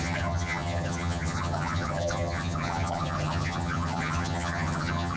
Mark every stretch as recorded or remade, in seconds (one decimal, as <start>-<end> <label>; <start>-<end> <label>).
0.0-5.2 remade